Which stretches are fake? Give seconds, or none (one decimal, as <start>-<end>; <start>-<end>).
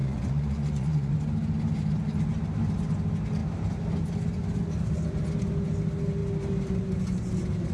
0.0-1.1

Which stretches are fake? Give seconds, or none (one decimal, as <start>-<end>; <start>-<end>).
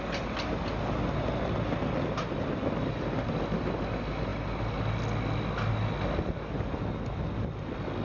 none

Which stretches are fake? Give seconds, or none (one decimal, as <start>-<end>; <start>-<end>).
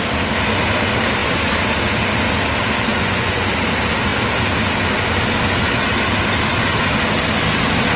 2.9-3.5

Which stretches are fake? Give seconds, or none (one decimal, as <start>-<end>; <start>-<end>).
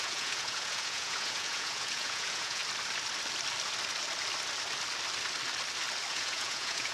0.0-2.6; 6.1-6.9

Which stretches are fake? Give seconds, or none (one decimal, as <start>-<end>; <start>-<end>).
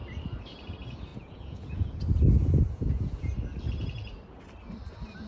1.1-2.0; 2.4-3.3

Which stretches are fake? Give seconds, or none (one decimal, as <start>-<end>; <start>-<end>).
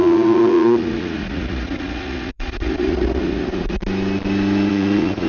0.0-3.8; 4.7-5.3